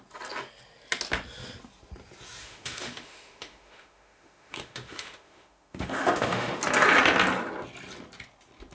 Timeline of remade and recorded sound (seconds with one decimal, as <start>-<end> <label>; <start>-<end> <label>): 0.0-2.4 recorded; 2.4-6.6 remade; 6.6-8.7 recorded